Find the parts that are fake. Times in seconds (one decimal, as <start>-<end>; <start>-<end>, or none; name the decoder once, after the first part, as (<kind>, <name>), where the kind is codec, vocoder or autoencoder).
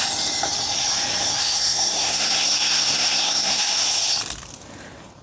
1.4-3.9 (codec, SNAC)